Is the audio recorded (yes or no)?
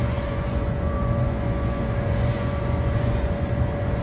no